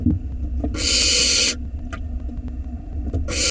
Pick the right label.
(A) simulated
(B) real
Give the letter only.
B